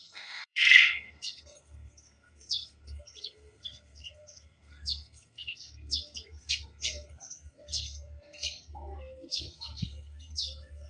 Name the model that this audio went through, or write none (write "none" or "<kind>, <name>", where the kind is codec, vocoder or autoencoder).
codec, SNAC